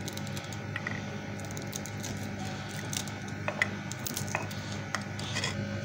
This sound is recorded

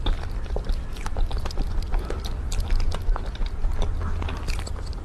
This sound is recorded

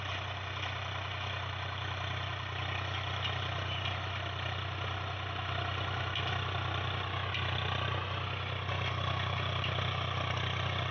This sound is recorded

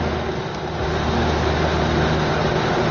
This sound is recorded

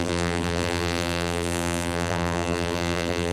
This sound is remade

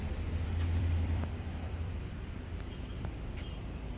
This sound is remade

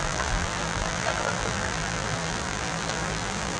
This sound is remade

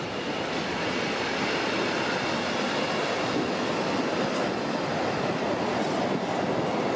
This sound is recorded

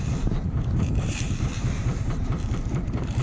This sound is remade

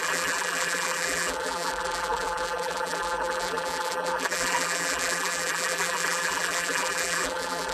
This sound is remade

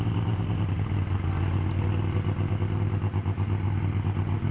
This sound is recorded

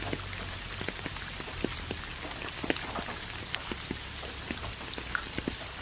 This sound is recorded